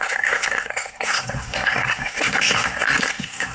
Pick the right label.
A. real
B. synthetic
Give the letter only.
B